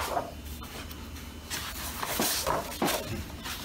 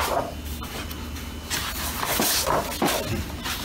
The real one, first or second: second